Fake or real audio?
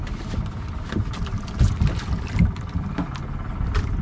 real